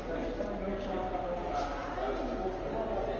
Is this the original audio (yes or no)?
yes